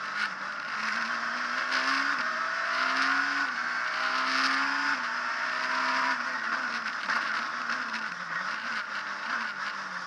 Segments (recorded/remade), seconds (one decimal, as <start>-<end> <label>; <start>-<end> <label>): 0.0-10.1 recorded